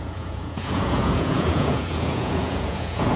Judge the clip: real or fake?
fake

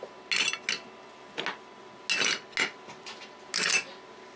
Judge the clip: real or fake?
real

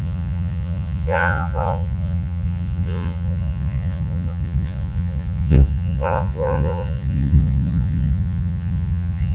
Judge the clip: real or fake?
fake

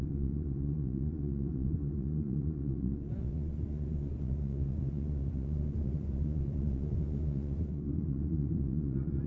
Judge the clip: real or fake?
fake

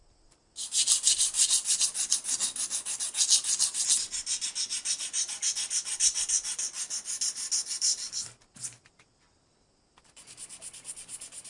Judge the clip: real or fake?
real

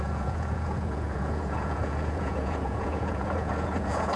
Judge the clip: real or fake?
fake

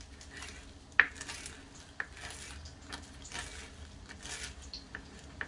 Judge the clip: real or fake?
real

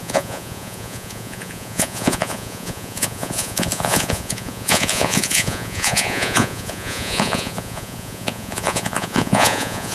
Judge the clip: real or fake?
fake